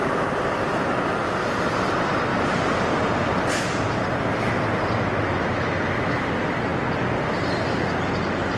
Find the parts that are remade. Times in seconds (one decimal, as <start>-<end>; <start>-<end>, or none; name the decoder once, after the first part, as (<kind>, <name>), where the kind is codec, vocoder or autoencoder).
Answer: none